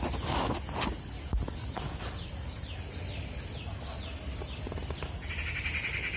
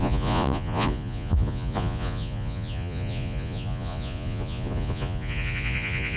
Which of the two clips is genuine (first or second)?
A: first